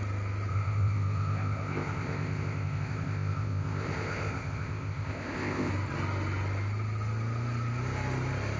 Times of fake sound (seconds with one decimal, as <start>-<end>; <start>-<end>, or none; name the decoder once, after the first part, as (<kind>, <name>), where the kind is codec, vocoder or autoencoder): 0.5-5.7 (codec, ZipCodec)